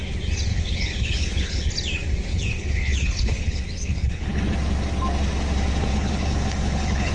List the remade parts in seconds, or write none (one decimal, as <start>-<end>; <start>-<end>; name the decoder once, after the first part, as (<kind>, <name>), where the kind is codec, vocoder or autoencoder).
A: 0.5-1.7 (codec, HILCodec); 2.3-4.4; 5.9-7.1